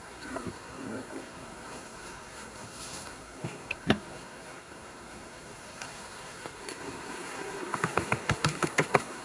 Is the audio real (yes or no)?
no